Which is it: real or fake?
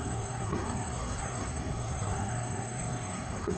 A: fake